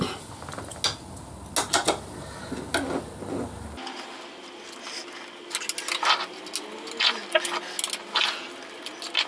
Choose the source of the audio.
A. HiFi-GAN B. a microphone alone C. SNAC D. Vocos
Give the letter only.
B